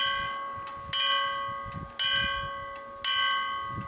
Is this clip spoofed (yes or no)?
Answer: no